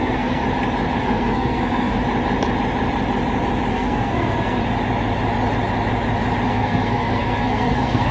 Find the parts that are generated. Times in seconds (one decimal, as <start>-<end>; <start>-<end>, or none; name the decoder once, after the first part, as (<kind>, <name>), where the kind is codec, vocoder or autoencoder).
0.0-0.4 (codec, SNAC); 1.0-2.0; 3.7-4.6; 6.5-8.1